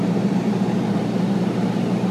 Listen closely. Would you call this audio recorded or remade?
remade